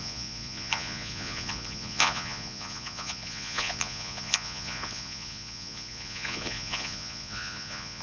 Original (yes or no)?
no